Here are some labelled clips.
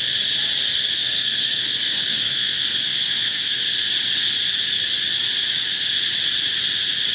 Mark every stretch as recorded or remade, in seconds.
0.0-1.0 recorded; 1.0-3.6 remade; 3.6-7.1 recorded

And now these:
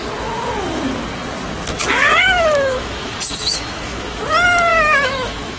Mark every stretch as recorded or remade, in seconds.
0.0-1.7 recorded; 1.7-4.2 remade; 4.2-4.7 recorded; 4.7-5.6 remade

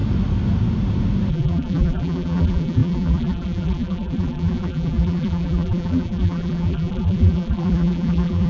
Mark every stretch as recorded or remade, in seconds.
0.0-1.3 recorded; 1.3-8.5 remade